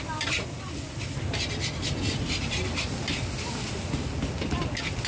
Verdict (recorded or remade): recorded